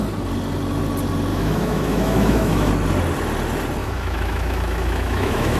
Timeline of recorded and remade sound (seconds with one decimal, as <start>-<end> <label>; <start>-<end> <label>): 0.0-1.3 recorded; 1.3-2.7 remade; 2.7-3.8 recorded; 3.8-5.6 remade